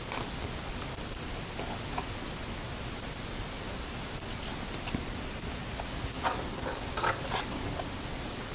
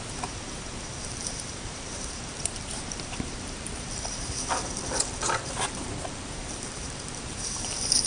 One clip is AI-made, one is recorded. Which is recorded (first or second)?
first